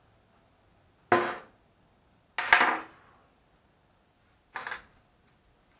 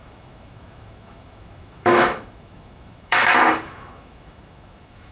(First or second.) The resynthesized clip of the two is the second